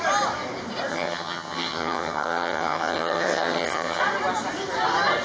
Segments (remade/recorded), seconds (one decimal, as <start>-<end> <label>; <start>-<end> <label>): 0.0-0.9 recorded; 0.9-4.0 remade; 4.0-5.2 recorded